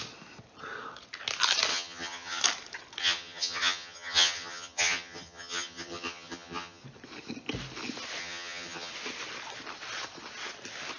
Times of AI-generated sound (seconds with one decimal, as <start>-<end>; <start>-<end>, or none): 1.7-2.4; 3.0-6.8; 8.2-8.9